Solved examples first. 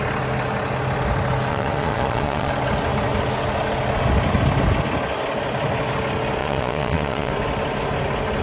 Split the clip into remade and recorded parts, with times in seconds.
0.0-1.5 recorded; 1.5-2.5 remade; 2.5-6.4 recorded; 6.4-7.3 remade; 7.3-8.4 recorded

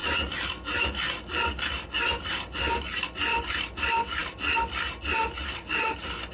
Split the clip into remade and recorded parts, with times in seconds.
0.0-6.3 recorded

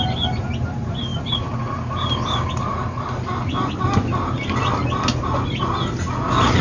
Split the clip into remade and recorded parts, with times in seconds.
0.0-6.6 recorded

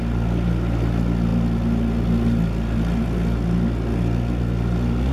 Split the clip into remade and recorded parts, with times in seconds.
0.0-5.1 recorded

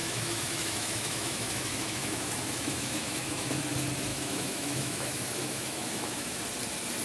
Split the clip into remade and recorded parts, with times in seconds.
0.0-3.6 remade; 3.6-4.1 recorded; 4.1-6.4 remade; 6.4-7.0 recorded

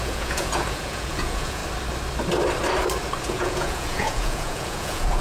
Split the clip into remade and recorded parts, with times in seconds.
0.0-1.6 remade; 1.6-3.2 recorded; 3.2-5.2 remade

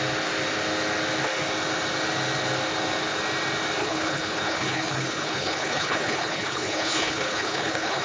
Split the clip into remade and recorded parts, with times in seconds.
0.0-3.8 recorded; 3.8-8.0 remade

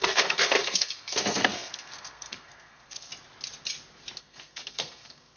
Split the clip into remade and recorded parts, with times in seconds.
0.0-3.1 remade; 3.1-4.2 recorded; 4.2-5.4 remade